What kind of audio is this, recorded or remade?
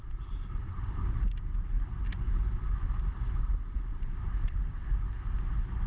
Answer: recorded